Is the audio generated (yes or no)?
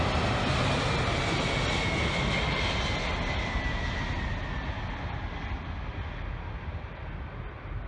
no